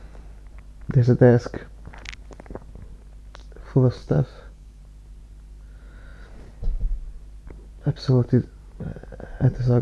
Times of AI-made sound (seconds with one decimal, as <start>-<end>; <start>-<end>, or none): 4.0-4.8